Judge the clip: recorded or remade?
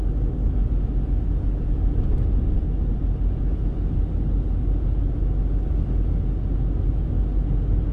recorded